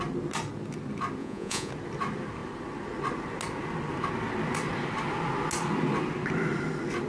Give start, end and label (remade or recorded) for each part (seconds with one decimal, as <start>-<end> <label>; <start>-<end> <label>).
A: 0.0-1.2 recorded; 1.2-1.7 remade; 1.7-7.1 recorded